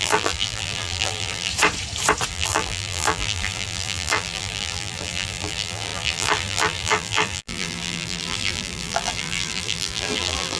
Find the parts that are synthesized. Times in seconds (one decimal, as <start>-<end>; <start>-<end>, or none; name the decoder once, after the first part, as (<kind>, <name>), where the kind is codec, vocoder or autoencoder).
0.0-1.5 (vocoder, BigVGAN v2); 2.3-10.6